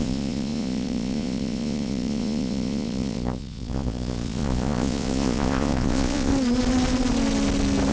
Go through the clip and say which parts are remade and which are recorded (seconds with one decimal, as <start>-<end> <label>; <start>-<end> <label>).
0.0-6.3 remade; 6.3-7.9 recorded